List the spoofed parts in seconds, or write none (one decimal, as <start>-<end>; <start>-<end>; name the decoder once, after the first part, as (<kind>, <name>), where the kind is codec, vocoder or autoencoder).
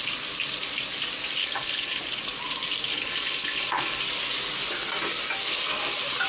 1.4-2.0 (codec, HILCodec); 2.9-4.0